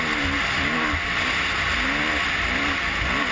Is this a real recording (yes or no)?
yes